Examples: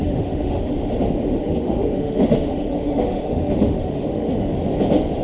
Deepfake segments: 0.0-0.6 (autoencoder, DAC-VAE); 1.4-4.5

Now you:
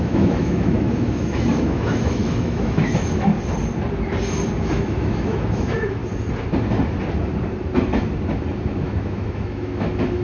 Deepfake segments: 0.0-3.3 (autoencoder, DAC-VAE); 4.6-6.0; 8.7-10.2

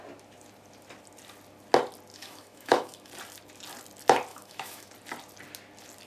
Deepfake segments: 2.1-3.1 (autoencoder, DAC-VAE); 4.3-4.9